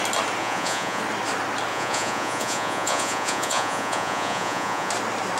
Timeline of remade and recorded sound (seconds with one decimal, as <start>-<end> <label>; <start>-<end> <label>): 0.0-0.4 recorded; 0.4-1.0 remade; 1.0-1.7 recorded; 1.7-4.9 remade; 4.9-5.4 recorded